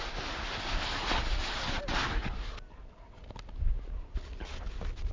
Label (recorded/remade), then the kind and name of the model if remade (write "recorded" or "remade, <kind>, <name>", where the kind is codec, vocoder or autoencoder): recorded